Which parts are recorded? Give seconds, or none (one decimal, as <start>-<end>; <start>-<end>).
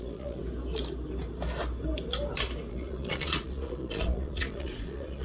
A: 0.4-2.7